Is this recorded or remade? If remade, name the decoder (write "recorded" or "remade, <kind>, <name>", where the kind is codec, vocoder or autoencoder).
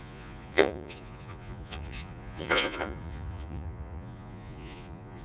remade, vocoder, Vocos